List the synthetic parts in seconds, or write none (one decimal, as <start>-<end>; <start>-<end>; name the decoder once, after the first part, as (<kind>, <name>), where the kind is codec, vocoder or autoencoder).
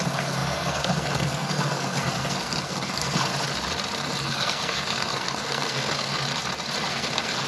0.0-3.3 (codec, SNAC); 4.2-6.1; 6.9-7.5